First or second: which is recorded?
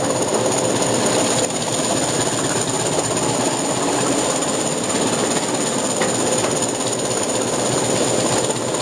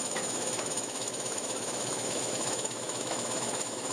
first